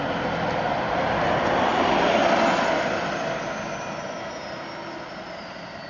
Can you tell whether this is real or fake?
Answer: real